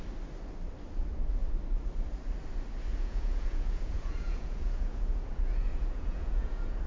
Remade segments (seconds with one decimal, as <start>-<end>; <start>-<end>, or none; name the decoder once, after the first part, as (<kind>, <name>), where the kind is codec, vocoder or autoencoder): 2.9-6.9 (vocoder, Vocos)